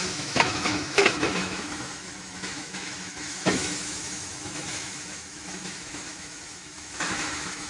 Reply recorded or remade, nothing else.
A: remade